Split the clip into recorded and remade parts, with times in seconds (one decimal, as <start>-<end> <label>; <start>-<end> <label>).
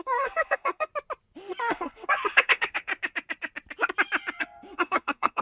0.0-0.9 remade; 0.9-1.5 recorded; 1.5-2.9 remade; 2.9-4.4 recorded; 4.4-5.4 remade